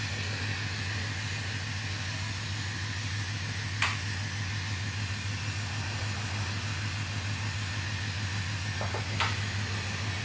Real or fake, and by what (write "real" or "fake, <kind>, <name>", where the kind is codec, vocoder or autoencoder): real